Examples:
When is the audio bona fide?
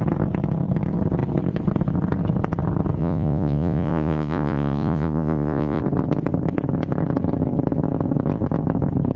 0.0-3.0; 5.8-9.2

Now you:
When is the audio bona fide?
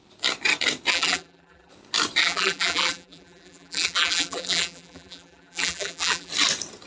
0.0-0.9; 1.7-2.2; 6.3-6.9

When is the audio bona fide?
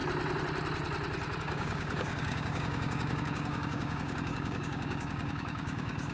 0.0-1.4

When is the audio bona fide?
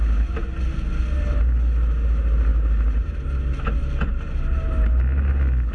0.0-5.7